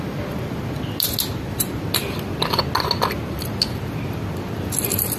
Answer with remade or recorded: recorded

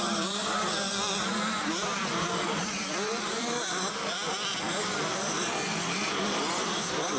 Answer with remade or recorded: remade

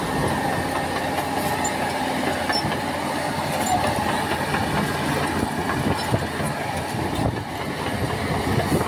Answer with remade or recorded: recorded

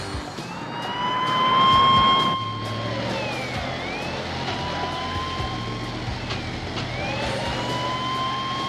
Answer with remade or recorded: recorded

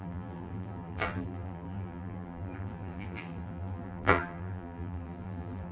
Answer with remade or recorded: remade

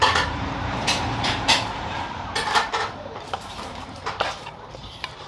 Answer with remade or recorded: remade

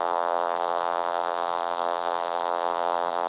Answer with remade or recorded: remade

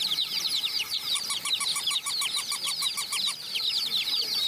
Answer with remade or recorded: remade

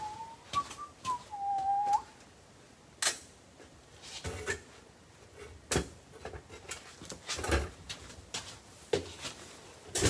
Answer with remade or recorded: recorded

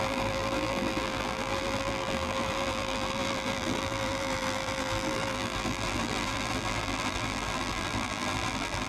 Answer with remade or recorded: remade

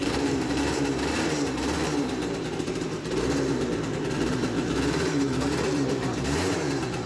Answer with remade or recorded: remade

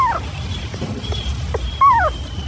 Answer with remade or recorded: recorded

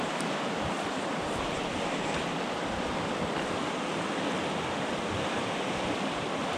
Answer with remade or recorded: remade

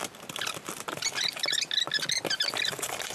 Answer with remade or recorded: recorded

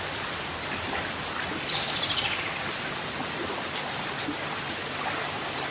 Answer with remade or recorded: remade